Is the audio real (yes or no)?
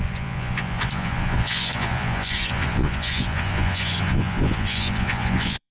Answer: no